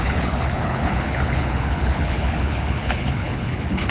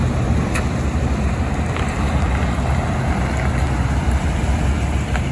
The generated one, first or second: first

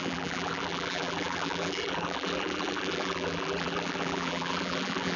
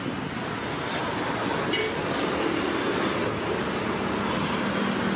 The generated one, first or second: first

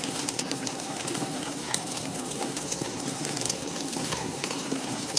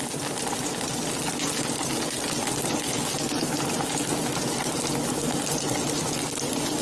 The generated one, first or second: first